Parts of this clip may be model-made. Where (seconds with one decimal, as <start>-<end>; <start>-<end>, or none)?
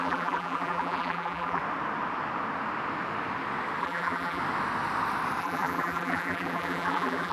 0.0-1.6; 3.8-4.4; 5.4-7.3